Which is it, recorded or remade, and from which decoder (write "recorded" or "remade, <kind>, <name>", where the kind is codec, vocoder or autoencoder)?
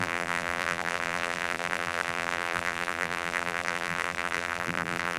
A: remade, vocoder, BigVGAN v2